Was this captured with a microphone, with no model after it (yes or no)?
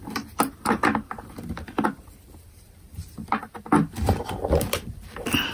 no